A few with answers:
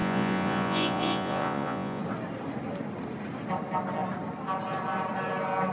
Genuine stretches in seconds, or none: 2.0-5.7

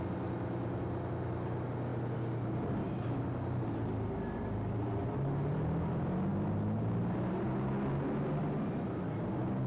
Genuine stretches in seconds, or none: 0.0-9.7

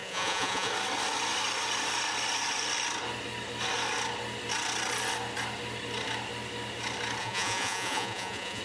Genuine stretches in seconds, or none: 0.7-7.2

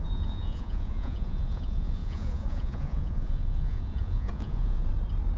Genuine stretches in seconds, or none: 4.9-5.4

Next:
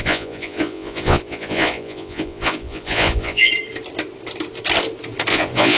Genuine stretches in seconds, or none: 3.5-5.3

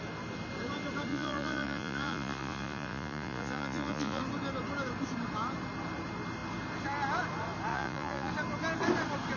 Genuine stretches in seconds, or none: 0.0-1.1; 4.2-7.7; 8.3-9.4